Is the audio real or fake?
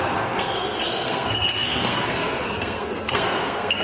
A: fake